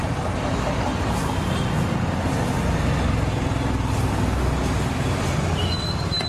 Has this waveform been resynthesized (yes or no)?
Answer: no